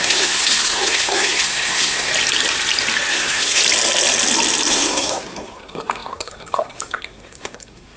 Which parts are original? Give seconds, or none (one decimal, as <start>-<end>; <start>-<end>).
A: 2.1-3.1; 3.6-4.7